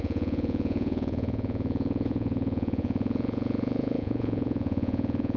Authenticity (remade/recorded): remade